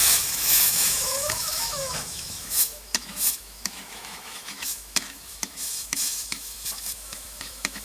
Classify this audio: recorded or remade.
remade